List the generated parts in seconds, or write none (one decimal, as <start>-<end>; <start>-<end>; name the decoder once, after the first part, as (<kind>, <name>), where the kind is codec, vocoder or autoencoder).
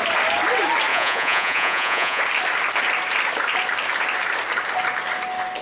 0.9-2.2 (vocoder, Vocos)